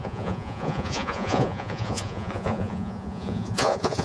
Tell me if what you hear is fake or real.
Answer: fake